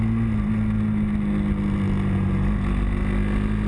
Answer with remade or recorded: recorded